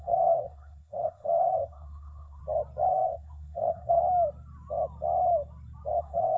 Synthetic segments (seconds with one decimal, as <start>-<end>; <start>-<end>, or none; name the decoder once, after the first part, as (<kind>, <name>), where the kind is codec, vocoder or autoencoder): 0.0-2.4 (codec, SNAC); 2.9-4.0; 6.0-6.4